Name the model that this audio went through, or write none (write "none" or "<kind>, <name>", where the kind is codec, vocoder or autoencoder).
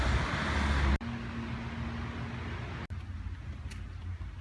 none